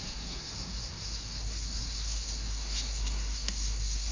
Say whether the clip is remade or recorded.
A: remade